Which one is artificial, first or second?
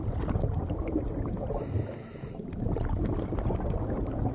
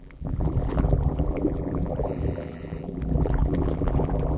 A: second